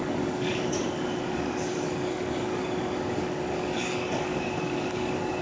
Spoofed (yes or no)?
yes